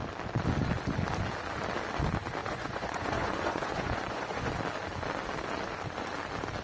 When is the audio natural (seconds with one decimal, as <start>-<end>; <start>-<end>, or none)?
0.0-2.4; 4.5-6.6